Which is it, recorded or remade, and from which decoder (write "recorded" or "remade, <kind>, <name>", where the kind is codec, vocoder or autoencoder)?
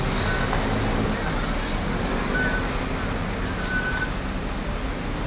recorded